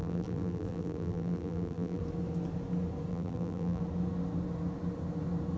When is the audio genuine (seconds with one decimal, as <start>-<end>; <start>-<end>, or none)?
2.0-3.1; 3.8-5.6